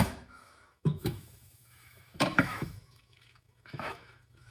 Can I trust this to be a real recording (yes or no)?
no